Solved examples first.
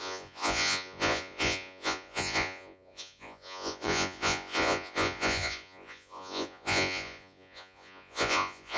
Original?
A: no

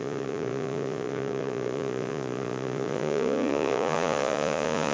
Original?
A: no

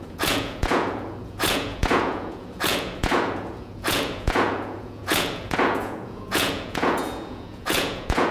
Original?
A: no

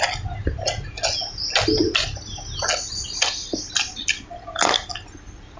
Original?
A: yes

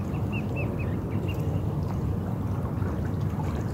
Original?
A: yes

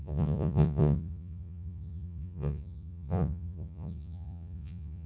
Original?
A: no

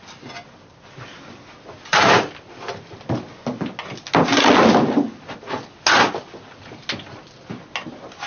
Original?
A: yes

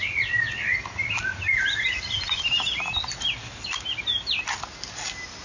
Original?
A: yes